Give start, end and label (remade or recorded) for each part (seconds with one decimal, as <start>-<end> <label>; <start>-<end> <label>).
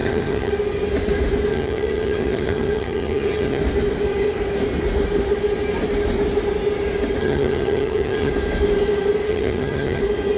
0.0-0.5 remade; 0.5-1.5 recorded; 1.5-3.6 remade; 3.6-7.2 recorded; 7.2-8.3 remade; 8.3-9.3 recorded; 9.3-10.0 remade; 10.0-10.4 recorded